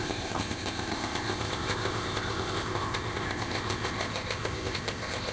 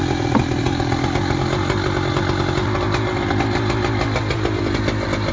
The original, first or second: second